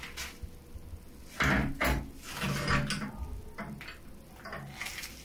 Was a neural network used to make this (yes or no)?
no